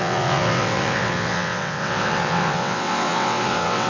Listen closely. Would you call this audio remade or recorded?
remade